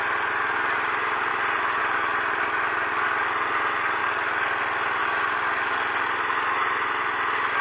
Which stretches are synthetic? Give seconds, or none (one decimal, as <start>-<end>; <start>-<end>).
1.3-1.8